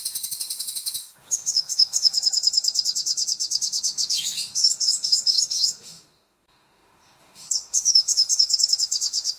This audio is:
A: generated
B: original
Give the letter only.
A